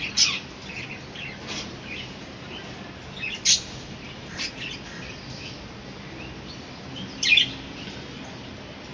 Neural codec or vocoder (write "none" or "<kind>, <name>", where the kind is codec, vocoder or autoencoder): none